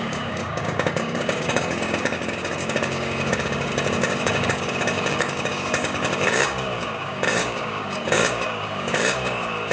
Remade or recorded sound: remade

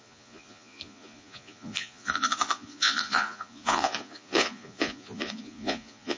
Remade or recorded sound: remade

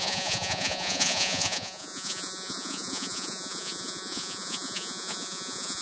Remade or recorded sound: remade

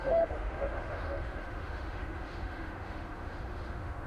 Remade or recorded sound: remade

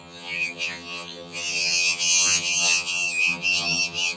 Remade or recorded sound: remade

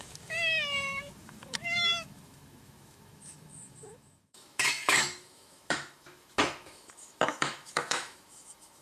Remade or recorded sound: remade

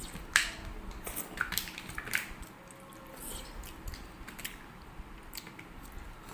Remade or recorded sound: recorded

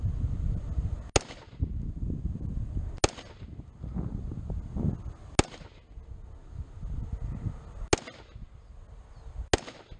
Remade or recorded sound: recorded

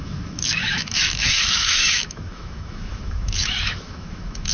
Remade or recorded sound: remade